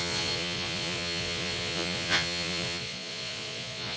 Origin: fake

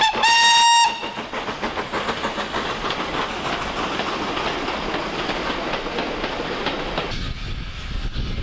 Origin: real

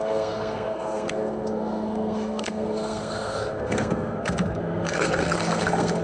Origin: fake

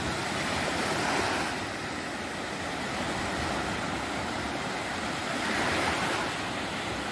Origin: real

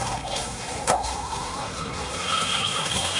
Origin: fake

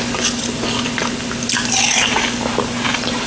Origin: real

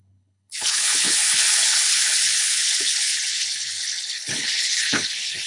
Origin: fake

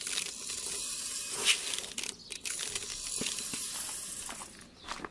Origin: real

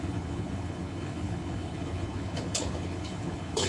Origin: fake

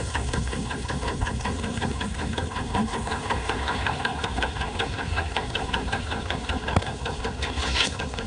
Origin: fake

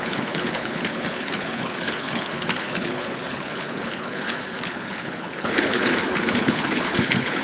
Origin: fake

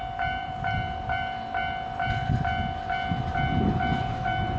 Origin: fake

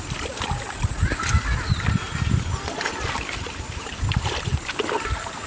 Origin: real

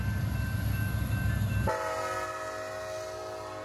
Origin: real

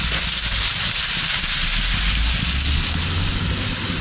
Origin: real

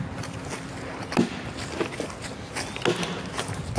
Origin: real